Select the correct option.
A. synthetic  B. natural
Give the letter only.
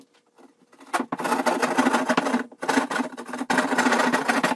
B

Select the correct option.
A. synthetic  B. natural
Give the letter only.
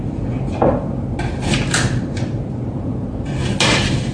B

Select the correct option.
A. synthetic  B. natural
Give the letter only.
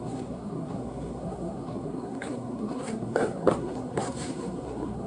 A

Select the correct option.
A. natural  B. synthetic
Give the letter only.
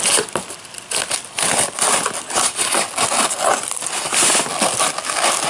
A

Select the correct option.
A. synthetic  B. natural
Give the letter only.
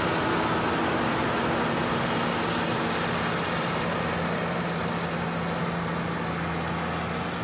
B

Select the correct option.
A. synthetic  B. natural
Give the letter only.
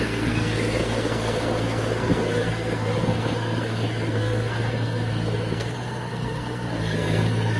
A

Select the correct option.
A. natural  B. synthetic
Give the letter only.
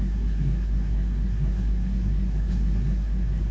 B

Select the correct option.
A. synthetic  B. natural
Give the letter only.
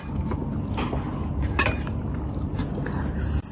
B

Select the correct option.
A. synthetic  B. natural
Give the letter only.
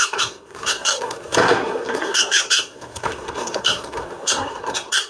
A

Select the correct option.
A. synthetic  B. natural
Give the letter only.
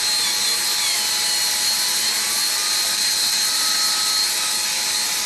B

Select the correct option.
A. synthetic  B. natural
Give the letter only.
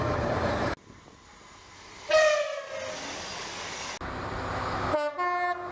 B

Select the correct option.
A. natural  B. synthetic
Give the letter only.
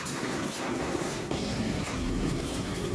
B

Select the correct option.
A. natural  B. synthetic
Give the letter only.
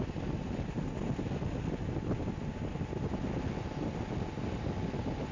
A